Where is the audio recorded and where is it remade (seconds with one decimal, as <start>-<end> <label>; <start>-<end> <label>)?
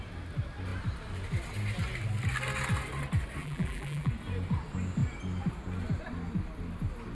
0.0-3.4 recorded; 3.4-4.1 remade; 4.1-7.1 recorded